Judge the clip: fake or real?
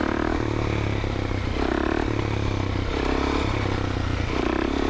real